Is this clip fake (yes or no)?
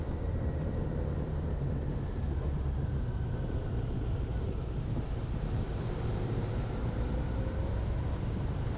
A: yes